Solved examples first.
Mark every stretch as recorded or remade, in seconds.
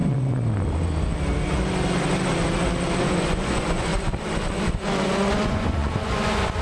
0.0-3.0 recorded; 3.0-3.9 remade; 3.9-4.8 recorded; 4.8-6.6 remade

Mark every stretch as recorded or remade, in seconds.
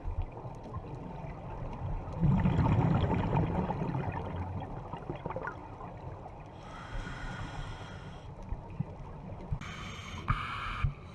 0.0-11.1 recorded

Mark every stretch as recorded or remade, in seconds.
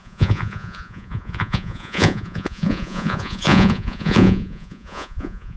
0.0-5.6 remade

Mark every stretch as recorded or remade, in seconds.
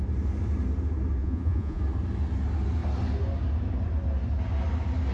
0.0-1.2 recorded; 1.2-1.8 remade; 1.8-5.1 recorded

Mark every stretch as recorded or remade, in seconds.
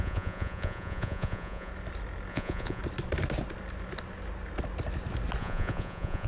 0.0-1.7 remade; 1.7-2.3 recorded; 2.3-2.8 remade; 2.8-5.4 recorded; 5.4-6.3 remade